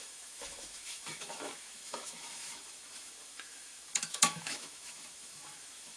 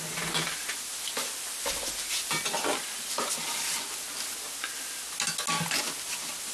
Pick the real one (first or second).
second